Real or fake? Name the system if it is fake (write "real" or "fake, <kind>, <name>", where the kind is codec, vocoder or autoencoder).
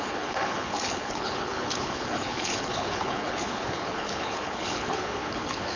fake, codec, HILCodec